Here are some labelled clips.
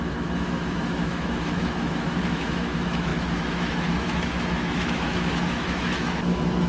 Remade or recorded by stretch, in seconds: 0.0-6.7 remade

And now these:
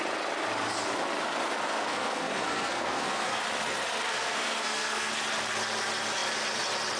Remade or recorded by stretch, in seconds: 0.0-1.7 recorded; 1.7-3.4 remade; 3.4-4.1 recorded; 4.1-5.1 remade; 5.1-7.0 recorded

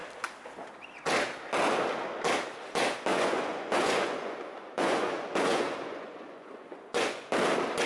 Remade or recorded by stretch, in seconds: 0.0-3.1 recorded; 3.1-7.3 remade; 7.3-7.9 recorded

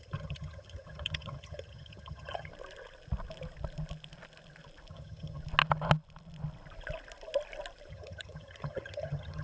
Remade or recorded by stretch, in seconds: 0.0-2.5 remade; 2.5-4.9 recorded; 4.9-5.4 remade; 5.4-7.9 recorded; 7.9-9.4 remade

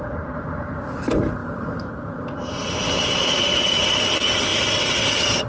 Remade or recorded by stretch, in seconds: 0.0-5.5 recorded